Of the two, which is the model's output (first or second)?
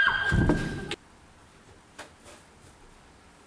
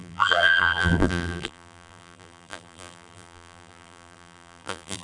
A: second